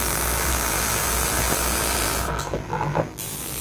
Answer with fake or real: fake